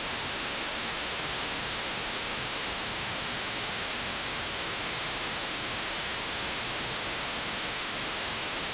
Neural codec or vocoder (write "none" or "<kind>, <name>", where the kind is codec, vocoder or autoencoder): autoencoder, DAC-VAE